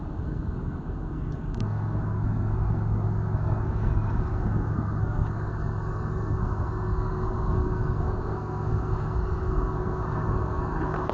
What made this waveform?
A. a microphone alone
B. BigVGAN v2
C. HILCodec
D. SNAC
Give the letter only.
D